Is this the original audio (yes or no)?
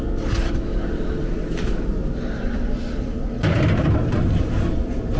yes